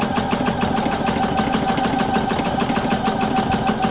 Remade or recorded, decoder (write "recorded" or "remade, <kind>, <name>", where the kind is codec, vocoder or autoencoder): recorded